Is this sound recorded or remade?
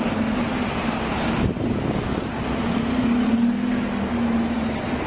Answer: recorded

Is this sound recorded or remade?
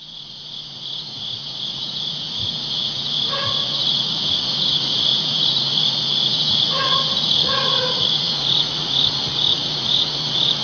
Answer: remade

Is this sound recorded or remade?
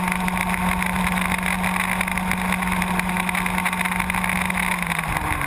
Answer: recorded